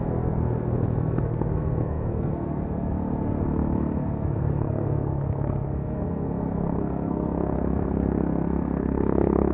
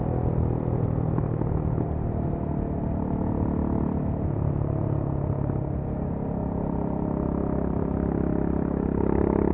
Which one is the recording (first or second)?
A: second